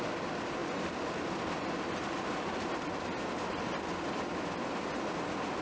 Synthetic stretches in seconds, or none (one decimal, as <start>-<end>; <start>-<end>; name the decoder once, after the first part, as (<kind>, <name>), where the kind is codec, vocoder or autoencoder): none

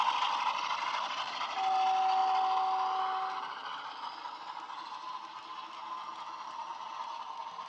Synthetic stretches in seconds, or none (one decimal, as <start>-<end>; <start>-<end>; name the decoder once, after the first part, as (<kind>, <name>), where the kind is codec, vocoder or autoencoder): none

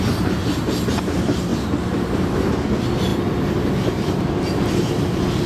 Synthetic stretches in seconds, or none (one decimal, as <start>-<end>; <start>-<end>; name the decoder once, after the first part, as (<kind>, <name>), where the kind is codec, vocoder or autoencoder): 0.4-1.0 (vocoder, BigVGAN v2)

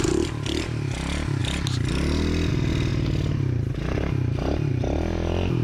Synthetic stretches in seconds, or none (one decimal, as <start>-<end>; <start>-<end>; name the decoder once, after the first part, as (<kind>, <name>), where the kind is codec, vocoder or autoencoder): none